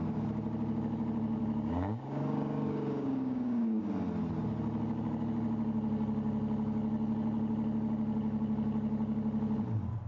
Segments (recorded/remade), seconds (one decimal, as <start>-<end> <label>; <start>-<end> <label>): 0.0-1.4 recorded; 1.4-3.8 remade; 3.8-10.1 recorded